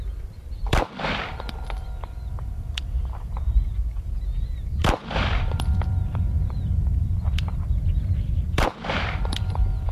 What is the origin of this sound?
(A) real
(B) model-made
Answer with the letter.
B